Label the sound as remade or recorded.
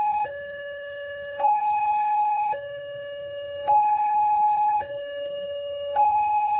remade